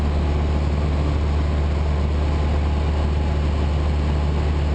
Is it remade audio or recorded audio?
recorded